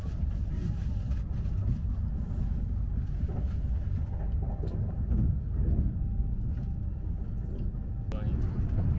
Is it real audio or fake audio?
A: real